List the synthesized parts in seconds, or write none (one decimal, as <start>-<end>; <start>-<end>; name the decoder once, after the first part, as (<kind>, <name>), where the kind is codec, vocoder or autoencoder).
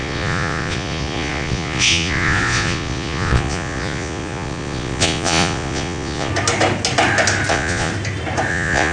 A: 0.0-6.3 (vocoder, Vocos); 7.5-7.9; 8.5-8.9